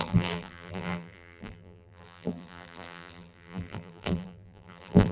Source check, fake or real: fake